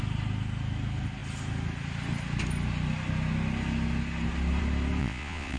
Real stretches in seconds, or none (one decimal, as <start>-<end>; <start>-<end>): 0.0-5.0